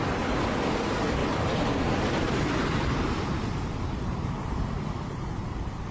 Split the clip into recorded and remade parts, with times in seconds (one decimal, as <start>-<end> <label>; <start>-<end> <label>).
0.0-1.2 recorded; 1.2-4.7 remade; 4.7-5.9 recorded